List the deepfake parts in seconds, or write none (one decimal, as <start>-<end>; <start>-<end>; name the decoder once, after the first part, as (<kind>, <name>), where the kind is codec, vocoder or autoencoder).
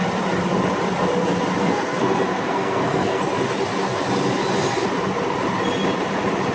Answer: 1.6-3.2 (codec, SNAC)